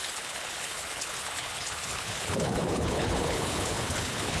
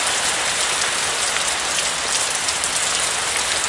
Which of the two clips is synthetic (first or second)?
first